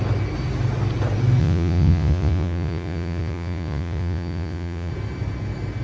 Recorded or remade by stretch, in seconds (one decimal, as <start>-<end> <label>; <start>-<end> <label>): 0.0-1.4 recorded; 1.4-4.9 remade; 4.9-5.8 recorded